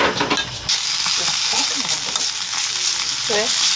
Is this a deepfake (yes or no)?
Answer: no